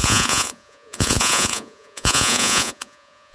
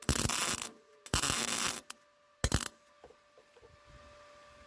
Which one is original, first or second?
second